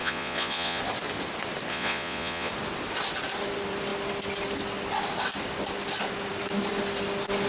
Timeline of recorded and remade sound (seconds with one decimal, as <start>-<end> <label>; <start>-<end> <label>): 0.0-0.8 remade; 0.8-1.7 recorded; 1.7-2.5 remade; 2.5-7.5 recorded